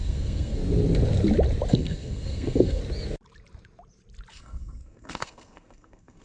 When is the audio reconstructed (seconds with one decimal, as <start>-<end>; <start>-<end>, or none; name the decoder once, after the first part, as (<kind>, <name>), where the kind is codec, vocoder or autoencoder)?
0.0-0.6 (codec, SNAC); 1.7-2.8; 4.3-6.2